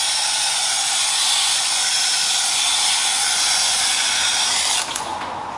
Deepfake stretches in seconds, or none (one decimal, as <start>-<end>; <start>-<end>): 0.0-1.9; 2.5-4.3; 4.9-5.6